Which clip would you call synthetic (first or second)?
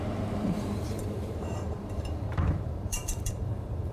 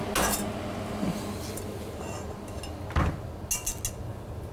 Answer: first